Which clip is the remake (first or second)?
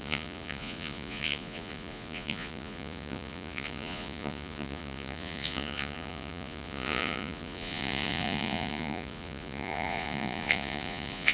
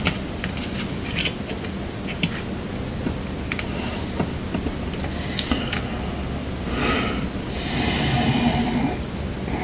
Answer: first